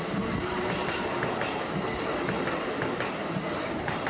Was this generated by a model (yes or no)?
no